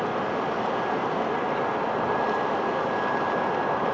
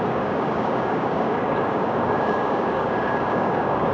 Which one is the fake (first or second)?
second